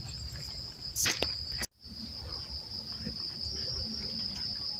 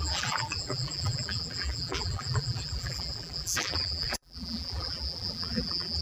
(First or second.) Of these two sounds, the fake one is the second